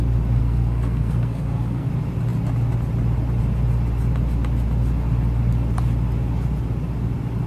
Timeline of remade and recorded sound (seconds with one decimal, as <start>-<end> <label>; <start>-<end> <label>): 0.0-0.4 recorded; 0.4-1.9 remade; 1.9-7.5 recorded

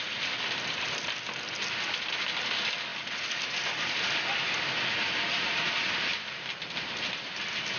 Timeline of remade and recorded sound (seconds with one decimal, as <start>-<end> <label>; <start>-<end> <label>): 0.0-7.8 recorded

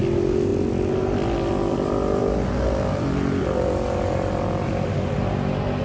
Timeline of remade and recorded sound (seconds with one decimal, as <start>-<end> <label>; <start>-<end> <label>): 0.0-5.8 recorded